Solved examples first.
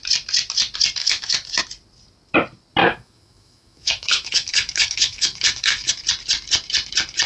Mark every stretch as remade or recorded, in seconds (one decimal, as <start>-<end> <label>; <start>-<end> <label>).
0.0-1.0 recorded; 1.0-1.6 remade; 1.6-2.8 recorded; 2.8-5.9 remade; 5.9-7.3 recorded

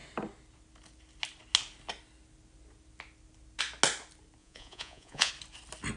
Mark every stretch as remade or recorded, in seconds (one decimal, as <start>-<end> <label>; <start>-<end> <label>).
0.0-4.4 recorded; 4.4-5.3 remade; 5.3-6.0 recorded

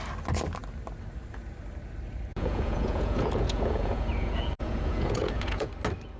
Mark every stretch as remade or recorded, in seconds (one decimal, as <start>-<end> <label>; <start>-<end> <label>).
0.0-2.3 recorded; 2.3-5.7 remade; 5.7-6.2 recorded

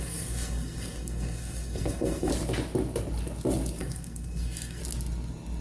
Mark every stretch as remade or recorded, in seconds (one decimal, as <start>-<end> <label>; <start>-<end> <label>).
0.0-2.3 remade; 2.3-3.8 recorded; 3.8-4.8 remade; 4.8-5.6 recorded

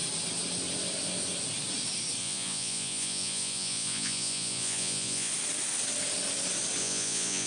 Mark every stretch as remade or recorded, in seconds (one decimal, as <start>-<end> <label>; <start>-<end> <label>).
0.0-2.2 recorded; 2.2-5.3 remade; 5.3-6.8 recorded; 6.8-7.5 remade